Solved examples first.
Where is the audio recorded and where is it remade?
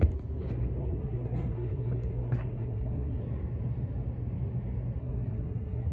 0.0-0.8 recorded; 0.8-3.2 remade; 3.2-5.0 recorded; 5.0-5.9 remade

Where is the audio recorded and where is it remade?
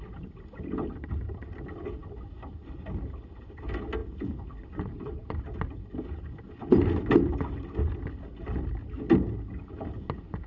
0.0-2.0 recorded; 2.0-3.4 remade; 3.4-10.5 recorded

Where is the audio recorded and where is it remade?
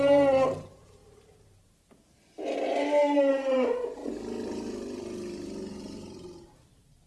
0.0-4.0 remade; 4.0-5.0 recorded; 5.0-7.1 remade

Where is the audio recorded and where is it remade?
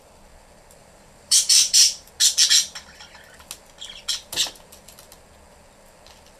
0.0-0.8 recorded; 0.8-2.1 remade; 2.1-6.4 recorded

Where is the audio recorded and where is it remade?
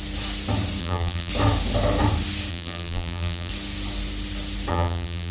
0.0-0.8 recorded; 0.8-1.3 remade; 1.3-2.5 recorded; 2.5-3.5 remade; 3.5-4.7 recorded; 4.7-5.3 remade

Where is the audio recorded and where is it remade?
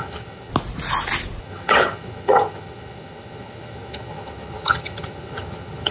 0.0-0.5 remade; 0.5-1.4 recorded; 1.4-5.9 remade